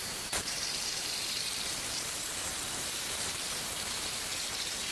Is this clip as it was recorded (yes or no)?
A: no